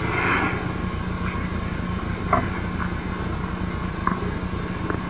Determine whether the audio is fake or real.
real